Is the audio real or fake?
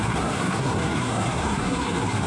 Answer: fake